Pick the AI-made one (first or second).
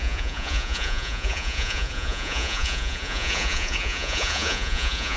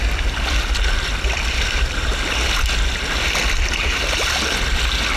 first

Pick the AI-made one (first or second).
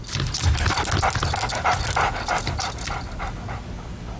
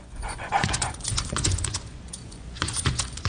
second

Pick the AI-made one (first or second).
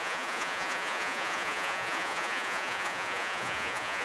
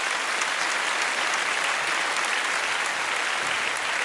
first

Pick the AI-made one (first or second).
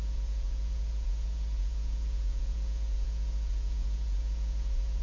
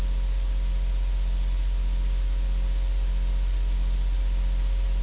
first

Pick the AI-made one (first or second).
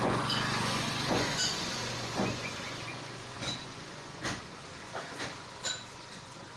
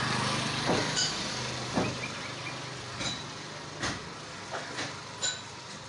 first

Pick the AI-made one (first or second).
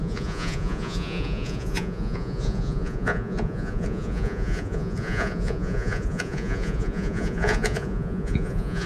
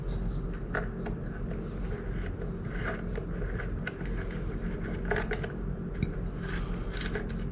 first